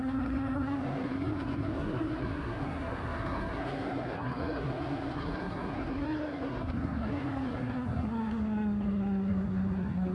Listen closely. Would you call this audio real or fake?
fake